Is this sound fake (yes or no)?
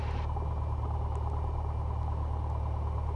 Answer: no